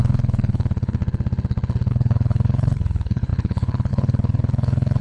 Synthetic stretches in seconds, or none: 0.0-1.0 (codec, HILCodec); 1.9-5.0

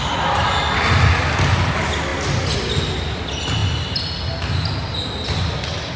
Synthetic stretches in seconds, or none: none

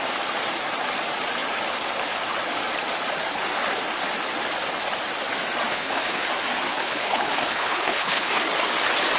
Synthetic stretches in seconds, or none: 5.7-6.3 (codec, HILCodec); 6.7-8.4

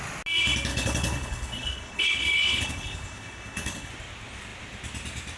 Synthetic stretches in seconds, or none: 0.7-3.9 (codec, HILCodec)

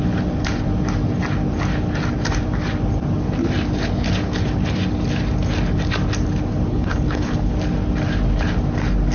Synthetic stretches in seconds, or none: 6.7-7.5 (codec, HILCodec)

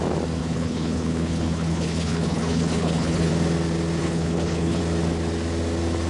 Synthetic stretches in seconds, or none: 0.4-3.3 (codec, HILCodec); 4.0-4.8